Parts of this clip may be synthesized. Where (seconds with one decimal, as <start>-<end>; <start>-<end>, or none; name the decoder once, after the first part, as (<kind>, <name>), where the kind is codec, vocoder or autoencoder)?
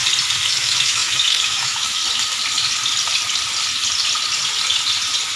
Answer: 0.5-2.0 (autoencoder, DAC-VAE)